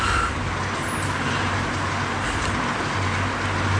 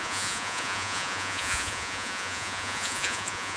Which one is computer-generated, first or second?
second